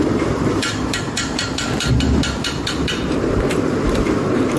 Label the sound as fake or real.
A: fake